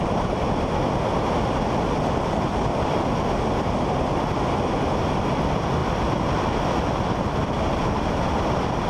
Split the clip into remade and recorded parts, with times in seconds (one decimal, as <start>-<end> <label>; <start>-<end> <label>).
0.0-8.9 recorded